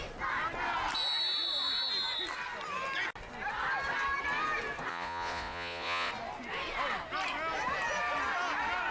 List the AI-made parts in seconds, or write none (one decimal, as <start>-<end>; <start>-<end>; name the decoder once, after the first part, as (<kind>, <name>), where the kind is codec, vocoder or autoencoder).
4.9-6.1 (vocoder, Vocos)